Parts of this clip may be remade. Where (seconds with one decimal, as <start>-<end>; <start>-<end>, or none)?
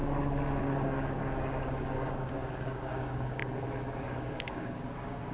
0.6-3.4; 4.0-5.3